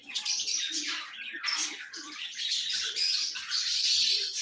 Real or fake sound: real